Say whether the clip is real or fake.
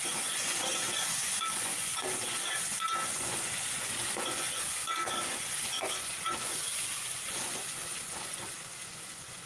fake